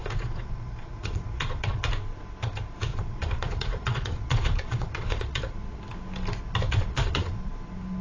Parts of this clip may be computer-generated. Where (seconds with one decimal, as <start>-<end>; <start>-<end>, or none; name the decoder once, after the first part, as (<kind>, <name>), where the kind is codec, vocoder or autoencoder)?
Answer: 0.0-1.9 (vocoder, Vocos); 2.9-5.4; 6.7-7.5